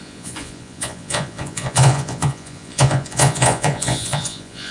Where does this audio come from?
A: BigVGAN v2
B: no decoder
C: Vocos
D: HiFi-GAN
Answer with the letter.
C